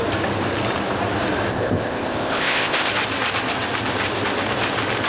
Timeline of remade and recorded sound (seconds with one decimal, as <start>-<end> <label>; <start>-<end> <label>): 0.0-1.5 recorded; 1.5-2.9 remade; 2.9-5.1 recorded